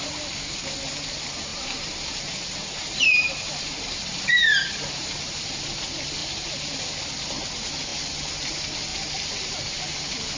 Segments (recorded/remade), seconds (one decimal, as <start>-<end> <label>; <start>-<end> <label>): 0.0-1.5 recorded; 1.5-5.6 remade; 5.6-6.2 recorded; 6.2-6.9 remade; 6.9-8.9 recorded; 8.9-9.6 remade; 9.6-10.4 recorded